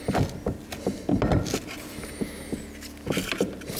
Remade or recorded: recorded